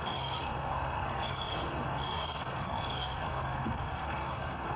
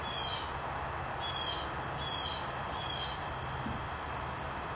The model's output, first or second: first